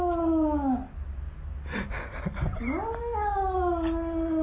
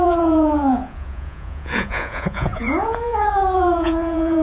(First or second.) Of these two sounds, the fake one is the second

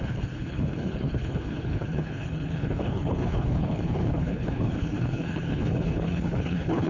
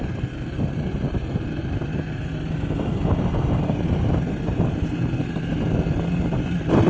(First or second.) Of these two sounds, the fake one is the first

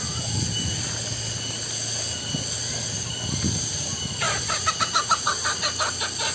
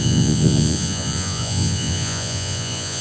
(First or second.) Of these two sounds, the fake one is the second